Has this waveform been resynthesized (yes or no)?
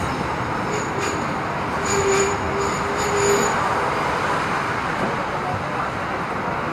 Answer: no